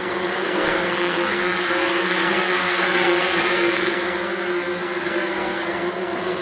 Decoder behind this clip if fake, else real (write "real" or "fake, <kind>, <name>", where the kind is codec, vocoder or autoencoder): fake, codec, SNAC